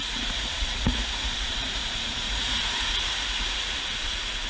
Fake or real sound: fake